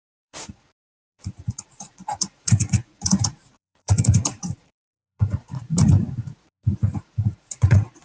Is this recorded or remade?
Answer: remade